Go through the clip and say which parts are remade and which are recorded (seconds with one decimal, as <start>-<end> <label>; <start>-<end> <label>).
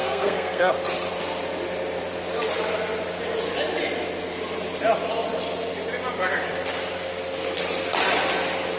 0.0-0.7 remade; 0.7-8.8 recorded